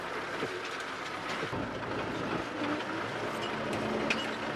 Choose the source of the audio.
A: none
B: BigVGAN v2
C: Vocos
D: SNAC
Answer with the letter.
A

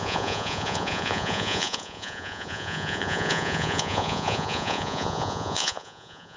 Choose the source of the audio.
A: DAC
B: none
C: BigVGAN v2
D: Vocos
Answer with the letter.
D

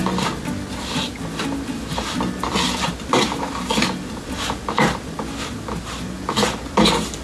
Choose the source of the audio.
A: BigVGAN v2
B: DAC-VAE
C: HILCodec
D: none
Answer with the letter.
D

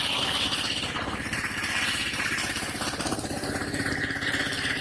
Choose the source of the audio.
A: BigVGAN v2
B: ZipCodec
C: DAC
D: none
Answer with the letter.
A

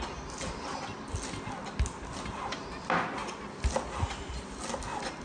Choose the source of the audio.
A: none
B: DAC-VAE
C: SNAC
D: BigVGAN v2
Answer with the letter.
A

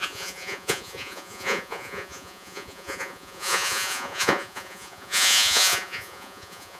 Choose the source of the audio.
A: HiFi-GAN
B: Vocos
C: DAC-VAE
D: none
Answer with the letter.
B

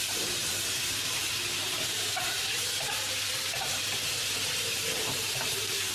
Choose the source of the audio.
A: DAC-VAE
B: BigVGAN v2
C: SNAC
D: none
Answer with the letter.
B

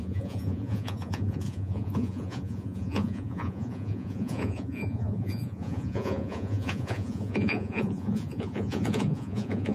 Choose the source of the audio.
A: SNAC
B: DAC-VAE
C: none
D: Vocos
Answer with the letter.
D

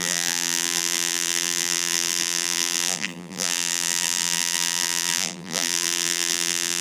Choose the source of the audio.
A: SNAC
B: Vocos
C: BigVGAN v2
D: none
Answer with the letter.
C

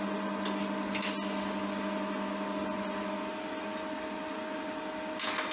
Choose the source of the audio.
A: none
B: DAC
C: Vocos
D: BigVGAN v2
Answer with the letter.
A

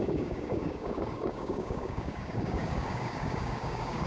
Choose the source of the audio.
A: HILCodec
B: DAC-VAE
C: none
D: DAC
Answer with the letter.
D